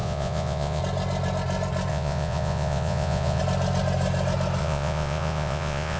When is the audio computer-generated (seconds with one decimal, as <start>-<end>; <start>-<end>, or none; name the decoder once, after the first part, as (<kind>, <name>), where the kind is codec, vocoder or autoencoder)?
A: 0.0-0.8 (vocoder, Vocos); 1.9-3.4; 4.6-6.0

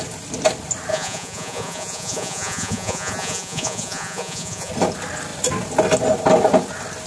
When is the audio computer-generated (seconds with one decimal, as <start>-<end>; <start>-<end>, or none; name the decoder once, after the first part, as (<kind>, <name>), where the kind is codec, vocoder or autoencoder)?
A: 0.9-4.7 (vocoder, Vocos)

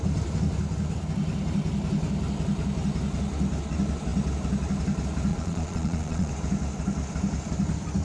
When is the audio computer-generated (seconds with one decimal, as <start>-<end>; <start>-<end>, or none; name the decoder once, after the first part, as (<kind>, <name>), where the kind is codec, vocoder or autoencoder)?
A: 5.3-6.3 (vocoder, Vocos)

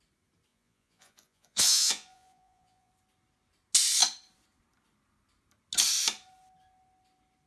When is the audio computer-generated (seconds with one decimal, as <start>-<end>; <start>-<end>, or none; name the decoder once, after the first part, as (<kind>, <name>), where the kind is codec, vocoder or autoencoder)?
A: 0.5-2.9 (vocoder, Vocos)

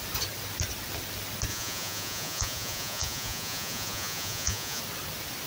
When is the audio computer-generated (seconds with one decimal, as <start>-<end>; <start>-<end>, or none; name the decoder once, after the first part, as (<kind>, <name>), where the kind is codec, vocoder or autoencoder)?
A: 1.5-4.8 (vocoder, Vocos)

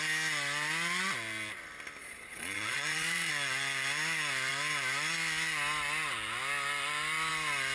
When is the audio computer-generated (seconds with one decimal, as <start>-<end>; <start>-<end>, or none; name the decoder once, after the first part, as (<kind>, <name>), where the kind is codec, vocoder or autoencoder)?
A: 2.0-3.3 (vocoder, Vocos)

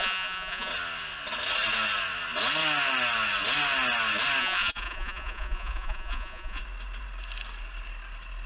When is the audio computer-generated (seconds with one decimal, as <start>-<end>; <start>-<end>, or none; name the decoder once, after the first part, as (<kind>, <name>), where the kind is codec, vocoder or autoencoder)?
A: 0.0-0.7 (vocoder, Vocos); 4.4-6.6

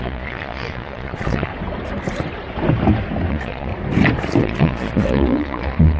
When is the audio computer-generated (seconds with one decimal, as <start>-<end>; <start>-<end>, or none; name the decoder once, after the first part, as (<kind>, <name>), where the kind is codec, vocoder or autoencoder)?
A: 0.0-1.5 (vocoder, Vocos); 3.3-3.7; 4.4-6.0